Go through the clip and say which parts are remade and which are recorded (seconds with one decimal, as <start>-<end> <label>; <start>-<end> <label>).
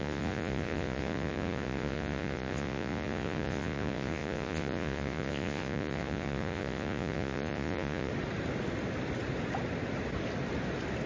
0.0-8.1 remade; 8.1-11.1 recorded